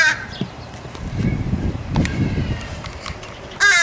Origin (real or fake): fake